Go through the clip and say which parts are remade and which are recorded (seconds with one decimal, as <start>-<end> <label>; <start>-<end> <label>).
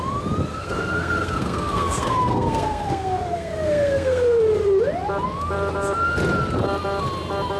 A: 0.0-0.5 recorded; 0.5-4.4 remade; 4.4-7.6 recorded